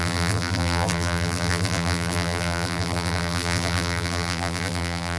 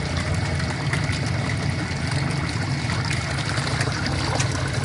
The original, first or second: second